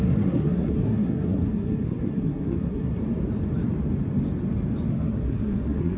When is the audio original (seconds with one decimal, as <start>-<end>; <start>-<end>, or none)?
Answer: 3.0-4.9